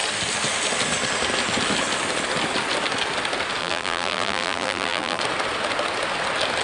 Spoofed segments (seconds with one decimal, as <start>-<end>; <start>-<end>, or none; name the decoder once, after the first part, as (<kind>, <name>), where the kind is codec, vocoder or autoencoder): 3.6-5.2 (vocoder, BigVGAN v2)